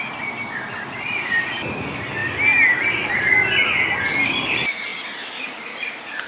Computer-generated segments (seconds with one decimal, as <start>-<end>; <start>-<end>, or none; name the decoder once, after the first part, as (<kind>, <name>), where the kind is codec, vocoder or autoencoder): none